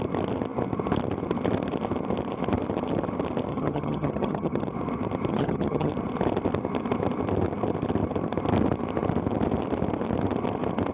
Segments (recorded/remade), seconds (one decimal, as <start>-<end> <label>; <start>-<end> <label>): 0.0-3.5 recorded; 3.5-4.6 remade; 4.6-5.3 recorded; 5.3-5.9 remade; 5.9-10.9 recorded